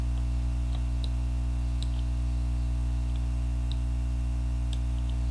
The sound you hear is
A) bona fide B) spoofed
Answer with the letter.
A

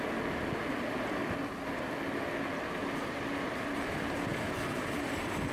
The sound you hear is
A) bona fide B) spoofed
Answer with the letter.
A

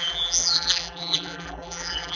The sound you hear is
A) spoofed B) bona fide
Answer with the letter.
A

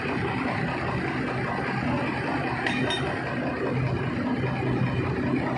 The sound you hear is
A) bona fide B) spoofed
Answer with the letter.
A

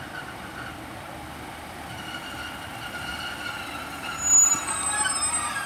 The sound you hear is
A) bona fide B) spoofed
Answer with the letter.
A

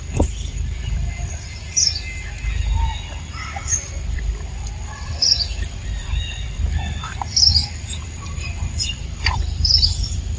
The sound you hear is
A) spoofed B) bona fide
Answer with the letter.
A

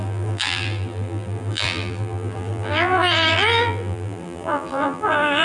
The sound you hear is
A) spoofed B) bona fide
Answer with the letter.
A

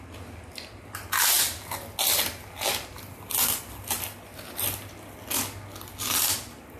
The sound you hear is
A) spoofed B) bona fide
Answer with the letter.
B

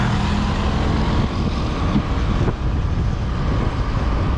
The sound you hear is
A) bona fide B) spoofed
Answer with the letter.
A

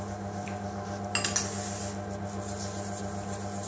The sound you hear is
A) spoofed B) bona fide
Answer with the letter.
B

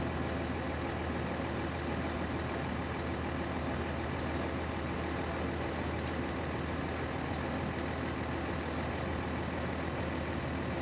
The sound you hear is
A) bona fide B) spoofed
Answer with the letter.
A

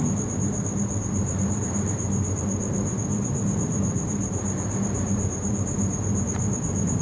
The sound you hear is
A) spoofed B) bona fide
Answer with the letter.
A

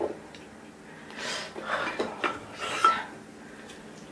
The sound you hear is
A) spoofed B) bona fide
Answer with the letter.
B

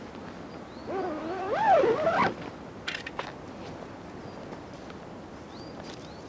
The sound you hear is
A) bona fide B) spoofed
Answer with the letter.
A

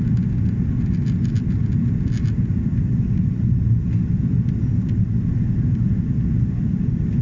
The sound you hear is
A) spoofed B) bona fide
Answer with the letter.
B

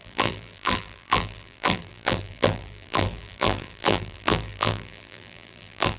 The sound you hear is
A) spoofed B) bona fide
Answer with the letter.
A